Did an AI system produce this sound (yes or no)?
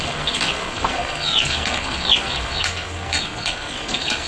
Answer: yes